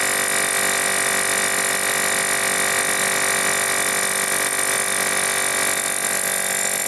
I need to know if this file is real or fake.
real